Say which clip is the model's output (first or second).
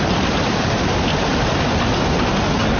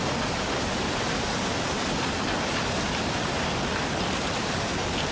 first